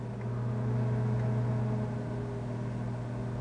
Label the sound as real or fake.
real